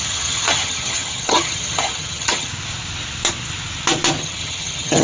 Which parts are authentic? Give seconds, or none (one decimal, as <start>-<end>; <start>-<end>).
2.5-4.2